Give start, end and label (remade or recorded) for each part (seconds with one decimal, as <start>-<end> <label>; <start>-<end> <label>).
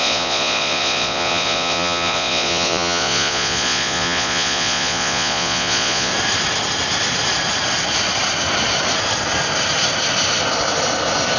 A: 0.0-6.1 remade; 6.1-11.4 recorded